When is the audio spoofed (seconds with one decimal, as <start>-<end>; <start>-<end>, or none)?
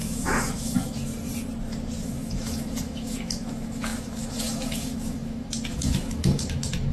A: 0.0-1.1; 2.0-6.9